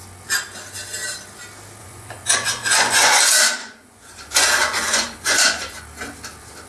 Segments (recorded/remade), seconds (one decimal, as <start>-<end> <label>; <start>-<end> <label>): 0.0-1.8 recorded; 1.8-3.2 remade; 3.2-3.6 recorded; 3.6-5.8 remade; 5.8-6.7 recorded